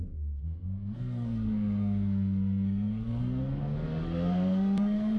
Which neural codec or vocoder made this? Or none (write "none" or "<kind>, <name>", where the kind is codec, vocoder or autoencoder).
codec, SNAC